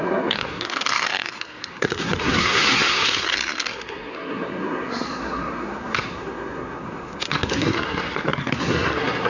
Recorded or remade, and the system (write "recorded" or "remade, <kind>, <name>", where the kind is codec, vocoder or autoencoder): remade, codec, SNAC